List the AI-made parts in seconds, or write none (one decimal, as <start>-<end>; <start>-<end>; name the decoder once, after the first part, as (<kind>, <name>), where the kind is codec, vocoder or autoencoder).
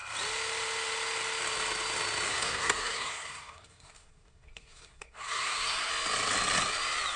2.3-5.9 (codec, SNAC)